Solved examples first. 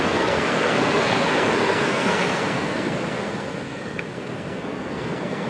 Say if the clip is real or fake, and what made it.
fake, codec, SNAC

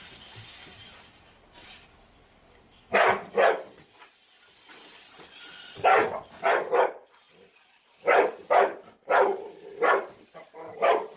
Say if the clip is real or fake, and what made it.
real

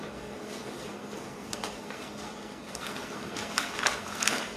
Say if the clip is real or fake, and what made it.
fake, codec, SNAC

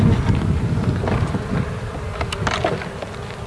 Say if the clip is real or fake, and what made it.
real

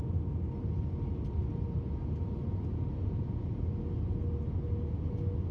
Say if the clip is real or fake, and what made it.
real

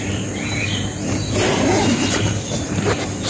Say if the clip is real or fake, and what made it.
fake, vocoder, BigVGAN v2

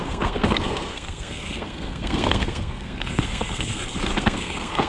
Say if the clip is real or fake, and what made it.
fake, codec, SNAC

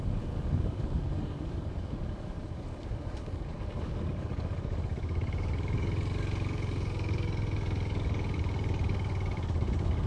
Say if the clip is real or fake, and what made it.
fake, codec, DAC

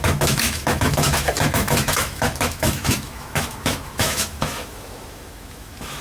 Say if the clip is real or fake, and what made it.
fake, autoencoder, DAC-VAE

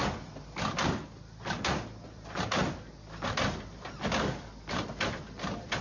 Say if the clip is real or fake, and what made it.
real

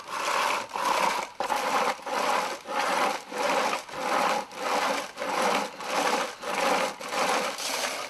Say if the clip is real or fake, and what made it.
real